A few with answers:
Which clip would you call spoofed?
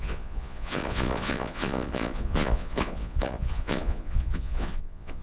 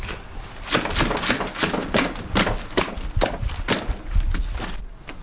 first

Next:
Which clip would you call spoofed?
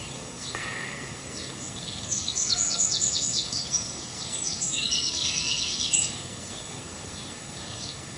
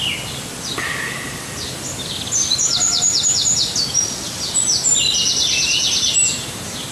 first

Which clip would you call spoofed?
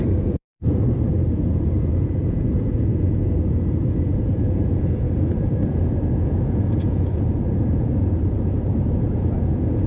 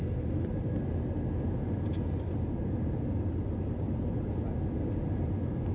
first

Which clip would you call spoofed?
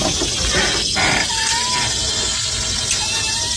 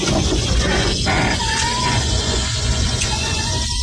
second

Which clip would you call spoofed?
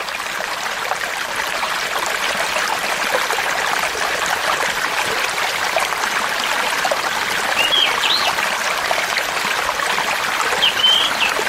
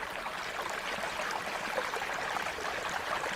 first